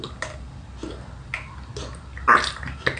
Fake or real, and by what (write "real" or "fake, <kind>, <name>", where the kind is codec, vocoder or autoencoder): real